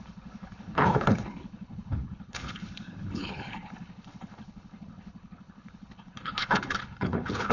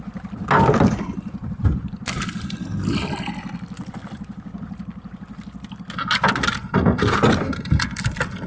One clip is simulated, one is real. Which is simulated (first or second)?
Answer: first